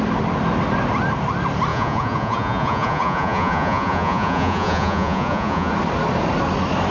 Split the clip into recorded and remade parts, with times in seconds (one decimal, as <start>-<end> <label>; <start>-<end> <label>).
0.0-1.7 recorded; 1.7-5.7 remade; 5.7-6.9 recorded